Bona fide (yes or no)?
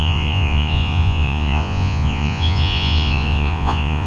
no